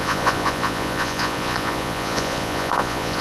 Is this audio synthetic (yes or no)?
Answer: yes